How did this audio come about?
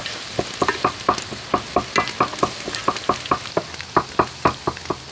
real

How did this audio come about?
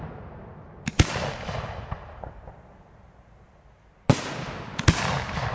real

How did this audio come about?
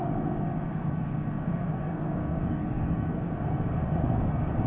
fake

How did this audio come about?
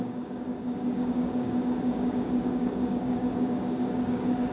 fake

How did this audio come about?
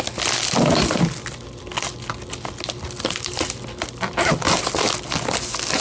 real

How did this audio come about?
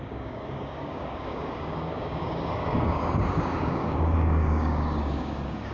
fake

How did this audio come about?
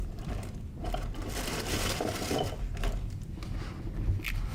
real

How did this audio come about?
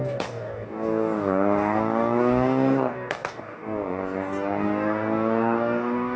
fake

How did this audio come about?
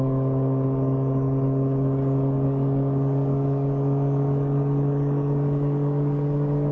fake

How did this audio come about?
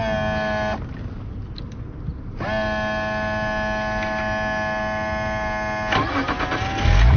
real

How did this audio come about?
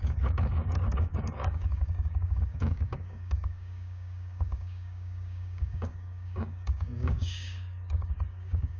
fake